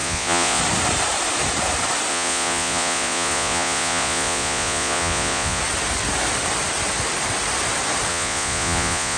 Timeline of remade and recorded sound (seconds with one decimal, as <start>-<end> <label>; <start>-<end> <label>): 0.0-0.6 remade; 0.6-2.1 recorded; 2.1-5.6 remade; 5.6-8.1 recorded; 8.1-9.2 remade